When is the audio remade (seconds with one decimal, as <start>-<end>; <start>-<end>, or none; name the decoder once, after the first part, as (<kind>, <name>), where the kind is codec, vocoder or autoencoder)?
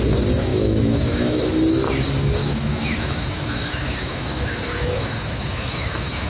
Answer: 0.5-1.4 (autoencoder, DAC-VAE); 2.4-6.3